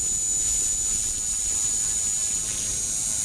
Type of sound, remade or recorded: recorded